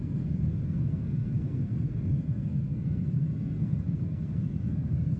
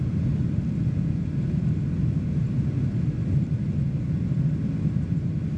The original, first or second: second